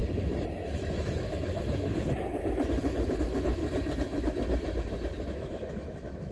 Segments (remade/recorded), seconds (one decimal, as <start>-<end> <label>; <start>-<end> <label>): 0.0-0.5 recorded; 0.5-1.9 remade; 1.9-3.2 recorded; 3.2-3.6 remade; 3.6-5.3 recorded; 5.3-6.3 remade